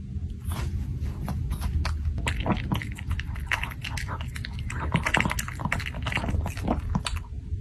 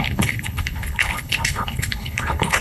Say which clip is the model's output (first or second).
second